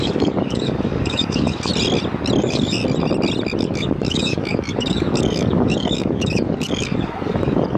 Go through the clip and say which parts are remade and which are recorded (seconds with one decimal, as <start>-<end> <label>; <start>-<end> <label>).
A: 0.0-1.7 remade; 1.7-2.4 recorded; 2.4-2.8 remade; 2.8-3.6 recorded; 3.6-7.8 remade